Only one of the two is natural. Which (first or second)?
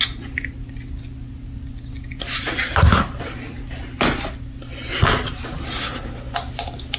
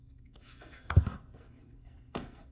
first